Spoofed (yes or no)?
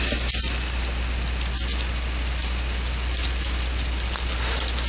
no